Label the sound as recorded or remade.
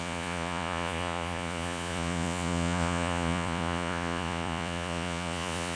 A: remade